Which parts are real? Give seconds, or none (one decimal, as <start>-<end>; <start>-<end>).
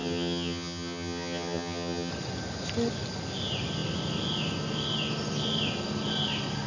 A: 2.1-6.7